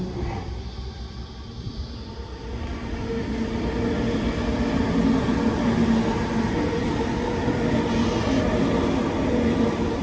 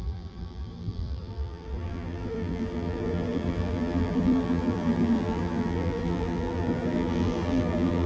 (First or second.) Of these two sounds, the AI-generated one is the second